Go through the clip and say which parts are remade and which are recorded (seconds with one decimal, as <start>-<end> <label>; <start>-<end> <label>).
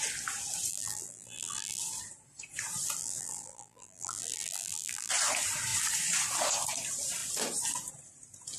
0.0-0.7 recorded; 0.7-1.8 remade; 1.8-3.0 recorded; 3.0-5.1 remade; 5.1-8.6 recorded